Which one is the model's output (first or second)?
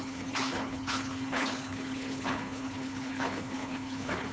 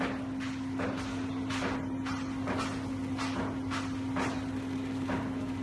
first